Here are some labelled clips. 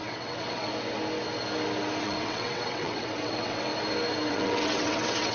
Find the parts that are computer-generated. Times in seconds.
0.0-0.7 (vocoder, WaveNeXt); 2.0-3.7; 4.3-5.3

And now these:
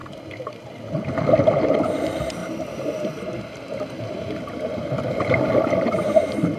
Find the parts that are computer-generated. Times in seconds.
2.0-2.4 (vocoder, BigVGAN v2); 4.5-6.6

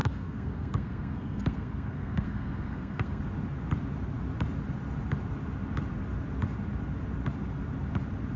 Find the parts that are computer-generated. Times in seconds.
0.0-3.2 (codec, SNAC)

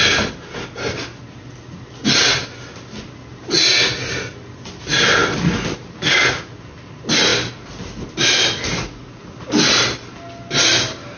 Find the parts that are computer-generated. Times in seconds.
none

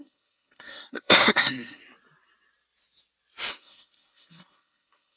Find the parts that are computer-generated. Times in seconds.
0.0-1.8 (codec, SNAC); 3.5-5.2

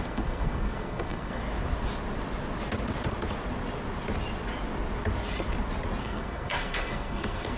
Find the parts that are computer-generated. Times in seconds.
0.0-1.4 (codec, SNAC); 6.0-7.6

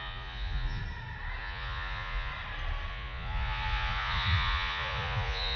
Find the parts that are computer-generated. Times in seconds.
0.0-0.8 (vocoder, Vocos); 1.4-2.3; 2.9-5.6

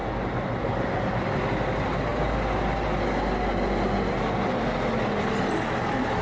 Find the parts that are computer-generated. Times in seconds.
none